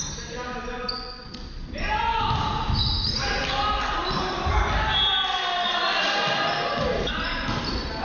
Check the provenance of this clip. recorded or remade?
recorded